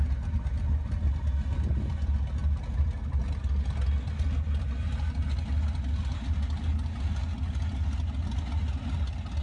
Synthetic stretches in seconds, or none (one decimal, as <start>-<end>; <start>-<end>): none